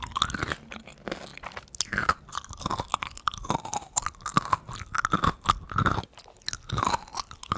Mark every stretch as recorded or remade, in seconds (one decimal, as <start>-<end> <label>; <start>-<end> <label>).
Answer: 0.0-7.6 recorded